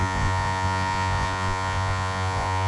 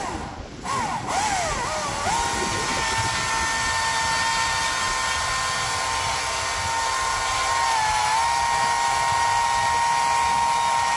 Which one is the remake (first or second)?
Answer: first